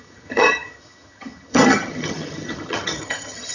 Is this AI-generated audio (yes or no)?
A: yes